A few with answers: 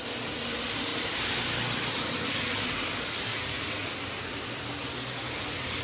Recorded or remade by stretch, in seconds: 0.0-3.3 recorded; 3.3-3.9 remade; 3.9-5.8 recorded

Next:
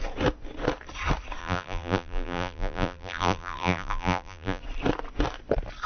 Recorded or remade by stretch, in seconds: 0.0-1.4 recorded; 1.4-4.6 remade; 4.6-5.9 recorded